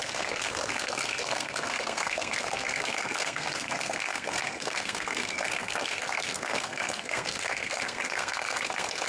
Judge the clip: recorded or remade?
remade